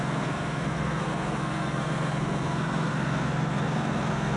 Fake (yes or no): yes